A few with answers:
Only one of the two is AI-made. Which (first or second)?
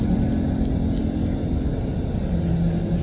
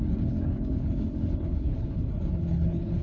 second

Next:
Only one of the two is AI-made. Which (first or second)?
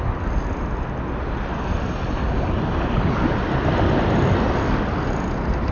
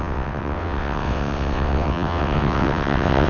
second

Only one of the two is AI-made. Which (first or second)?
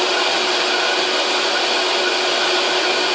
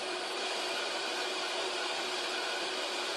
second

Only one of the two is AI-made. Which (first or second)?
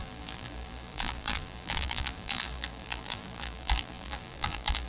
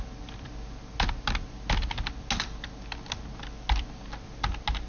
first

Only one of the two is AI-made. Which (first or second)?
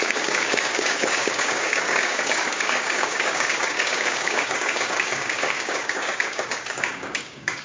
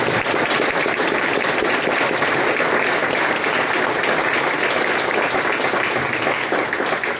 first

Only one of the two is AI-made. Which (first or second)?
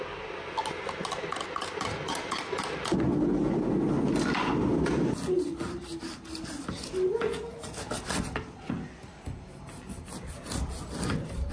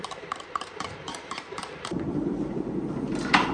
second